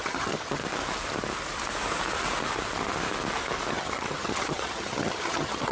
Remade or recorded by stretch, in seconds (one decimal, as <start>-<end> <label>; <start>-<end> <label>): 0.0-0.6 remade; 0.6-3.7 recorded; 3.7-5.7 remade